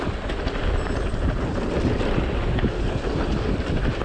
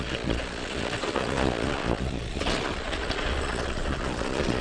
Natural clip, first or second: first